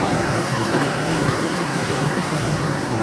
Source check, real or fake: fake